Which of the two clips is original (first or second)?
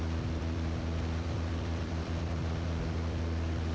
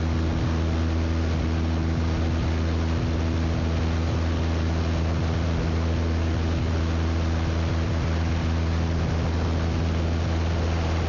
second